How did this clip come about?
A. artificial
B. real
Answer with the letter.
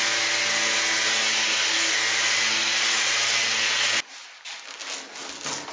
B